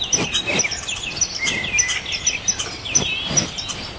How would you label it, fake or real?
real